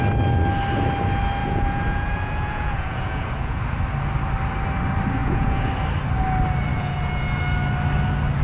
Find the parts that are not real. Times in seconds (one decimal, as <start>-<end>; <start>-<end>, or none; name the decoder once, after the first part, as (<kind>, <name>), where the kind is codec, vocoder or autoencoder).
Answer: 1.4-3.6 (vocoder, Vocos); 5.2-5.7; 6.7-7.4